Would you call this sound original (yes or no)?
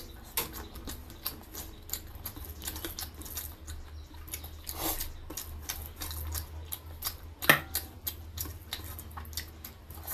yes